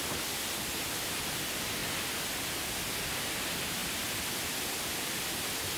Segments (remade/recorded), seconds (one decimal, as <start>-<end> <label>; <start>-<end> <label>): 0.0-5.8 recorded